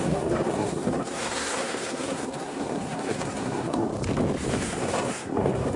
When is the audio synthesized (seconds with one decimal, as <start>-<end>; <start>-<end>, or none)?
0.0-3.9; 4.5-5.8